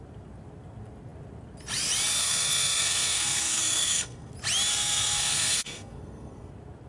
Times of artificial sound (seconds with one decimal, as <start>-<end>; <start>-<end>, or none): 2.2-4.3; 4.7-6.5